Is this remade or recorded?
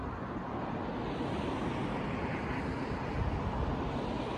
recorded